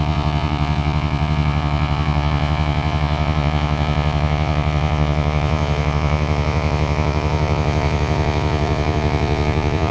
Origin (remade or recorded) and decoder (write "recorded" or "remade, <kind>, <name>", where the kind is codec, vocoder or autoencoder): remade, vocoder, Vocos